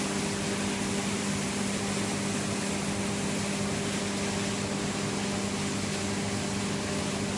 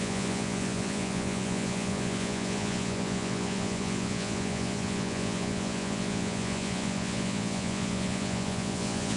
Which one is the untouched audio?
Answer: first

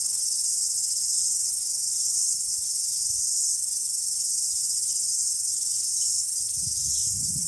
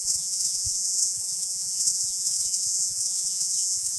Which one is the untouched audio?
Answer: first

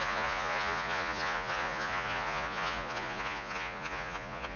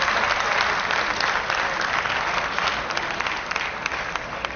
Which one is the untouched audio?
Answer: second